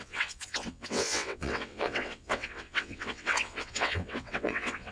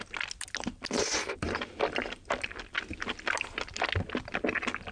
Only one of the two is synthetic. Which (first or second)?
first